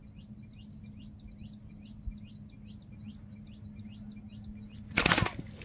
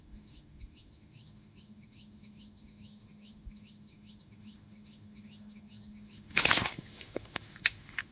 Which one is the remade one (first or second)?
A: second